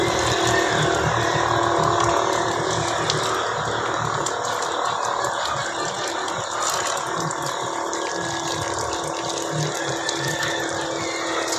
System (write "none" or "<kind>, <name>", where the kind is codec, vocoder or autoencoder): none